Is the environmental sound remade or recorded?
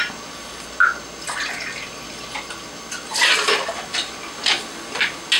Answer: recorded